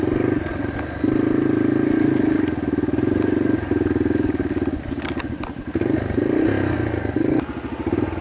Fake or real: real